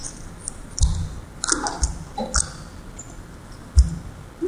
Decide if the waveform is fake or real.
real